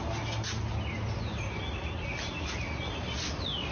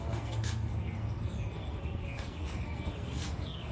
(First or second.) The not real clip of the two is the second